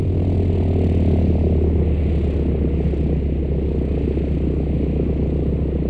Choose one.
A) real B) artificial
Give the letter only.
A